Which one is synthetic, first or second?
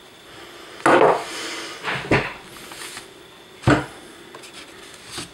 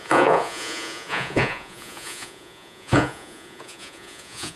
second